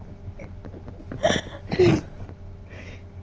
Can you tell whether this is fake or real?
real